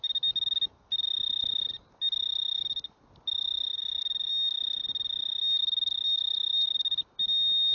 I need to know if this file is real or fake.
real